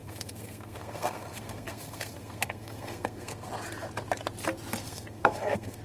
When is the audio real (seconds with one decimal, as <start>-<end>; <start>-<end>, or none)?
3.5-4.8